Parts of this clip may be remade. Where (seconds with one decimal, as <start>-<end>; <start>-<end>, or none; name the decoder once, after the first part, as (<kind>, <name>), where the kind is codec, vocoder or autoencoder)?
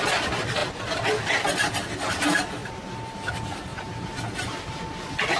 none